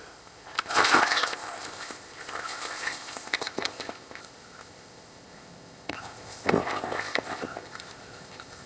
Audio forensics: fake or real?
fake